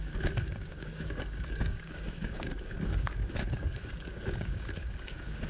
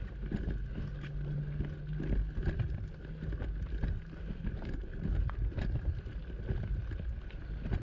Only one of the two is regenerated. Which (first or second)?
first